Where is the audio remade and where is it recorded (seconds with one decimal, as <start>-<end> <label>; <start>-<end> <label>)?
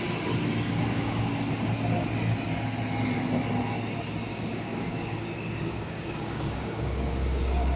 0.0-0.7 recorded; 0.7-1.3 remade; 1.3-4.3 recorded; 4.3-7.8 remade